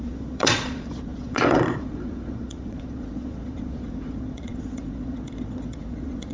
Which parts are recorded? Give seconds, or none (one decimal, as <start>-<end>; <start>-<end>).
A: none